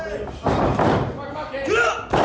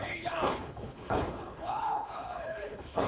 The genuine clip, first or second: first